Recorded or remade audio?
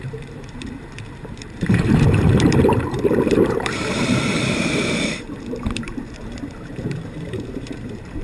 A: remade